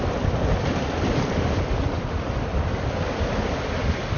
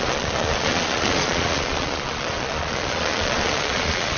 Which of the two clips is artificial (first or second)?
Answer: second